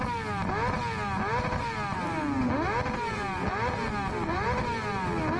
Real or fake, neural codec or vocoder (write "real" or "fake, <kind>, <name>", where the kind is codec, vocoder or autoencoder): real